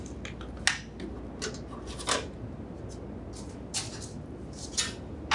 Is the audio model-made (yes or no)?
no